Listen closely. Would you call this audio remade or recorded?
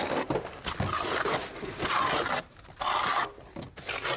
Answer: recorded